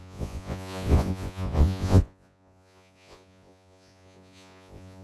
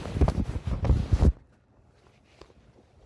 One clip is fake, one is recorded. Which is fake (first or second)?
first